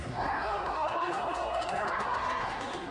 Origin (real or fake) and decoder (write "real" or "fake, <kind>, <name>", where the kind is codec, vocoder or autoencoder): fake, codec, SNAC